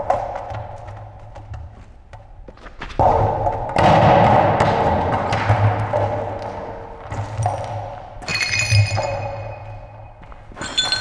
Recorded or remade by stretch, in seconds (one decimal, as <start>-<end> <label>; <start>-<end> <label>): 0.0-11.0 recorded